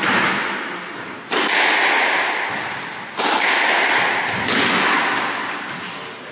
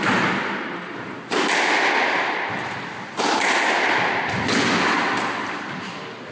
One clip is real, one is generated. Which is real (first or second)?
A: first